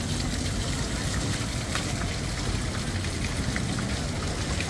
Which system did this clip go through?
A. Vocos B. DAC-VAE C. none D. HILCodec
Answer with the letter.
C